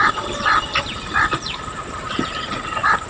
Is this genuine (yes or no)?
yes